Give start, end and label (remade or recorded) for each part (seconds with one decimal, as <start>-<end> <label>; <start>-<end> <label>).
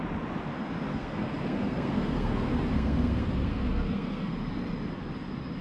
0.0-0.9 recorded; 0.9-4.3 remade; 4.3-5.6 recorded